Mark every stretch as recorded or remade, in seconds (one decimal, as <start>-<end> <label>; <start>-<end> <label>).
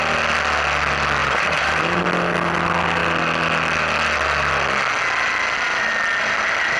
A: 0.0-1.2 recorded; 1.2-2.0 remade; 2.0-6.8 recorded